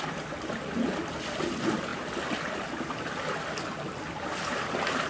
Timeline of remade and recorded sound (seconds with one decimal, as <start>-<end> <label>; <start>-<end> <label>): 0.0-5.1 recorded